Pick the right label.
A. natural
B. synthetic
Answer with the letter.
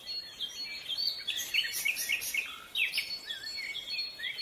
A